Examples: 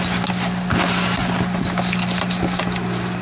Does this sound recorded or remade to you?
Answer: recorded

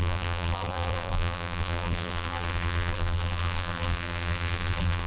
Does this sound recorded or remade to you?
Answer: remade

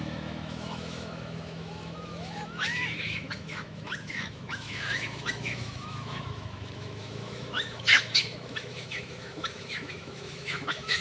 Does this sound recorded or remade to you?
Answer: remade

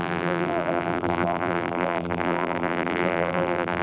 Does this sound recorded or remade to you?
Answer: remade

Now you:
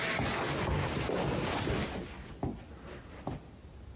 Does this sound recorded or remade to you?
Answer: recorded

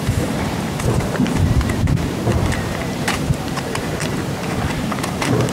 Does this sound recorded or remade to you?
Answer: remade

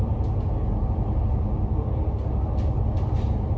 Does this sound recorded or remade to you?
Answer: recorded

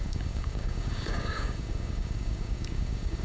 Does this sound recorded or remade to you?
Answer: remade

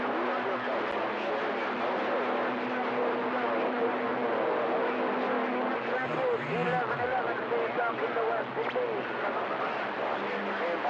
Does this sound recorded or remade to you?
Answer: recorded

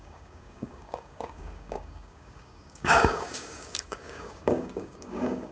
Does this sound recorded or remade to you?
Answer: remade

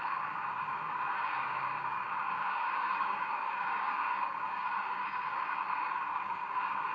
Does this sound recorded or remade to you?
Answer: remade